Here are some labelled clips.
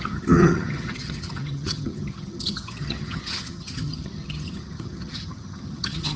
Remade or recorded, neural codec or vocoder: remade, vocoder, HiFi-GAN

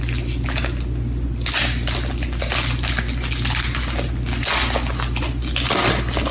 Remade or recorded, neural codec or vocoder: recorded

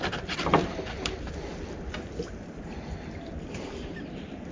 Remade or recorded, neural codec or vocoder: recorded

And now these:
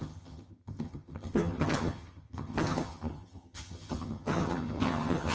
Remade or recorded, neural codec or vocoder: remade, vocoder, HiFi-GAN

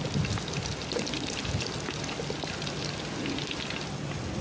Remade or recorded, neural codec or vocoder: recorded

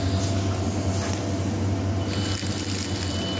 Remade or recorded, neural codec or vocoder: recorded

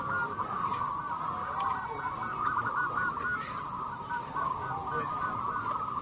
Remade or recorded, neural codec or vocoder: recorded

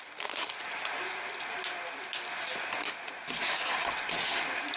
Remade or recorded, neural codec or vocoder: recorded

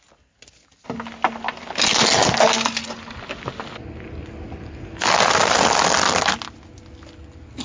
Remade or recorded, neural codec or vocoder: recorded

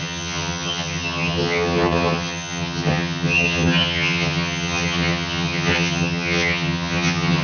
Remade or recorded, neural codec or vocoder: remade, vocoder, HiFi-GAN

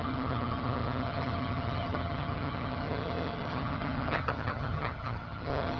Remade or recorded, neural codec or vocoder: remade, vocoder, HiFi-GAN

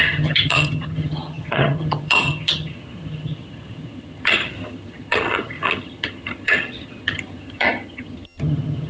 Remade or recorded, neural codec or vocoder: remade, vocoder, HiFi-GAN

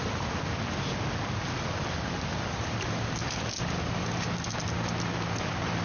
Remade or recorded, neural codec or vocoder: recorded